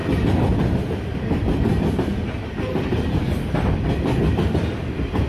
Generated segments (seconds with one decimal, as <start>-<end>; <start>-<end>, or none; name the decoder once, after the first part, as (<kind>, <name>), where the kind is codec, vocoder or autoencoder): none